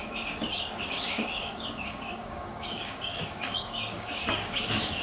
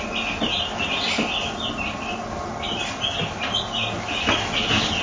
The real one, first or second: second